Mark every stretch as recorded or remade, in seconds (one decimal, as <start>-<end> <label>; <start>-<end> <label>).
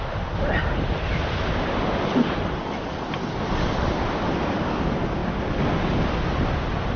0.0-7.0 recorded